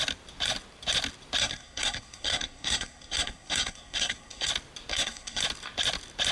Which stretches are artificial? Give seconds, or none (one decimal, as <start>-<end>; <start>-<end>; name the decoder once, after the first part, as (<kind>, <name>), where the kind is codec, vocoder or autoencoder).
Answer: 1.4-4.5 (codec, SNAC); 4.9-5.4